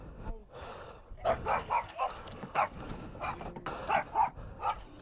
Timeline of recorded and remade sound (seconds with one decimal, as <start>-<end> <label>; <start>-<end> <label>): 0.0-0.4 recorded; 0.4-2.9 remade; 2.9-5.0 recorded